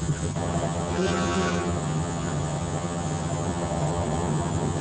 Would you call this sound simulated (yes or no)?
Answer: yes